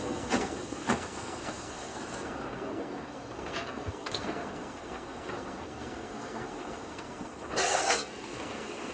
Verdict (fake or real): fake